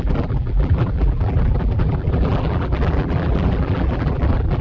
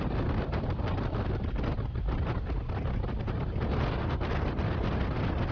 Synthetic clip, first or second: first